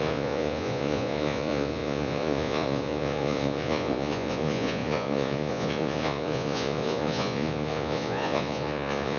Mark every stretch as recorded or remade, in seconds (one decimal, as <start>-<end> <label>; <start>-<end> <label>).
0.0-9.2 remade